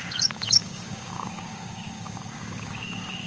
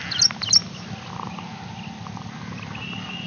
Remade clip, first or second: first